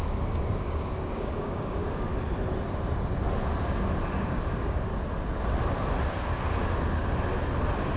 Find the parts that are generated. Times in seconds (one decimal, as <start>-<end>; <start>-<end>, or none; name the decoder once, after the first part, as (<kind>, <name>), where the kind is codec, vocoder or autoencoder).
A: 0.0-2.1 (codec, DAC); 4.2-4.9